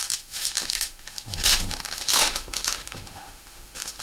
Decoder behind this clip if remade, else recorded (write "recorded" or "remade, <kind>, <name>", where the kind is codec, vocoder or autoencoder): remade, autoencoder, DAC-VAE